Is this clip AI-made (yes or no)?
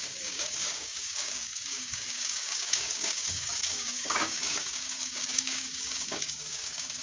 yes